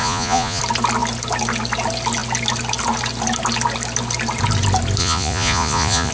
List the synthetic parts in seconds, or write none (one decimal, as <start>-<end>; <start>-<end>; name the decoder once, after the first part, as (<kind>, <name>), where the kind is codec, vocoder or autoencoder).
0.0-0.6 (vocoder, Vocos); 5.0-6.1